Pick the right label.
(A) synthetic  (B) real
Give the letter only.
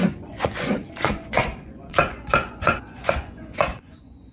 A